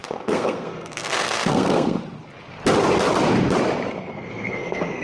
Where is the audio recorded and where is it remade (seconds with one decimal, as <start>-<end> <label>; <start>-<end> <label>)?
0.0-2.0 remade; 2.0-3.9 recorded; 3.9-5.0 remade